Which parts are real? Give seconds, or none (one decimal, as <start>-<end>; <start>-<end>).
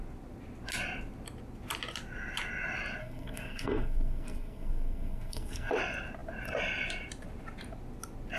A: 0.0-3.0; 5.7-8.4